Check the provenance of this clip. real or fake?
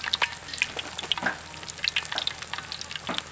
real